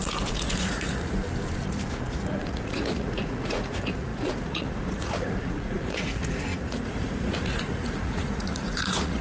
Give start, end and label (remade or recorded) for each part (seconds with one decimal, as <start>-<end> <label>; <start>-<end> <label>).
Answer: 0.0-1.2 remade; 1.2-1.7 recorded; 1.7-9.2 remade